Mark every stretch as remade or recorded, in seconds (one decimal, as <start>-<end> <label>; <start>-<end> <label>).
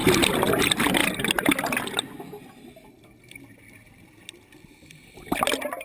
0.0-1.0 remade; 1.0-4.5 recorded; 4.5-5.8 remade